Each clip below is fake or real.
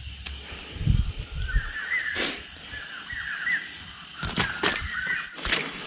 real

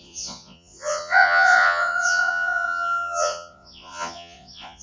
fake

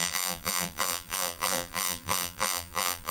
fake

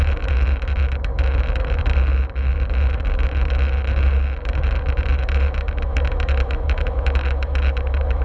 fake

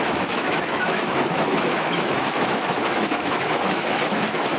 fake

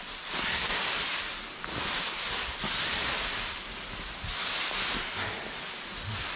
real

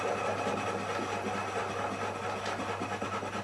real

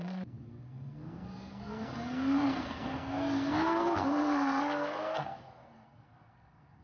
fake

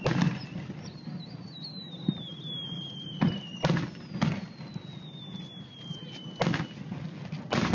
real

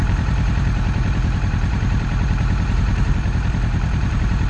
fake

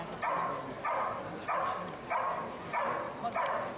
real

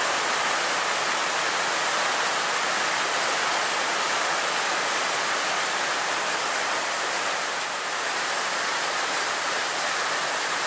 real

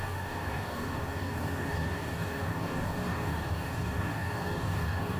fake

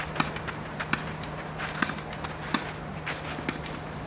real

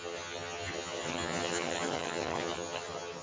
fake